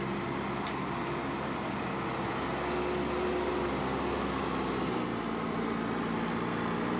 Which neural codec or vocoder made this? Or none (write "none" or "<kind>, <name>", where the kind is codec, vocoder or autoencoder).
none